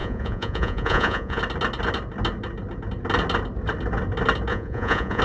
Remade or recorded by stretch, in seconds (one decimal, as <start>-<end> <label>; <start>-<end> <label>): 0.0-1.4 remade; 1.4-4.5 recorded; 4.5-5.2 remade